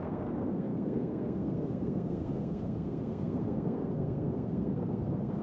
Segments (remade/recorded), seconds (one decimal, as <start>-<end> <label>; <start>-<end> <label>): 0.0-5.4 remade